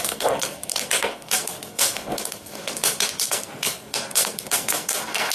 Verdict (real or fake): fake